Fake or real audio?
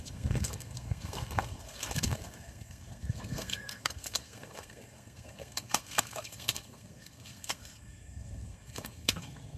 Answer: fake